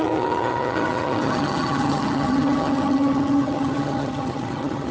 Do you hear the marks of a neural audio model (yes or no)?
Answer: yes